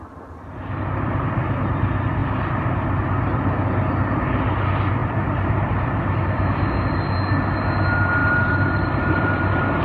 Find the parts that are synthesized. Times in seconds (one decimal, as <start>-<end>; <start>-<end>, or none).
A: 5.0-5.7; 8.2-9.8